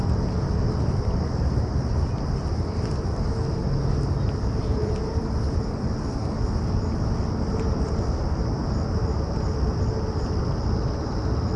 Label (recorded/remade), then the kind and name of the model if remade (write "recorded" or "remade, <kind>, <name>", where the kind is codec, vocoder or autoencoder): recorded